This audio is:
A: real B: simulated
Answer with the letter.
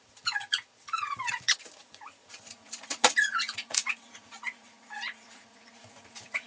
B